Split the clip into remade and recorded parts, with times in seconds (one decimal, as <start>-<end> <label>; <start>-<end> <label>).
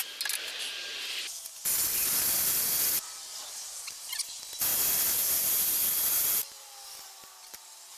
0.0-8.0 recorded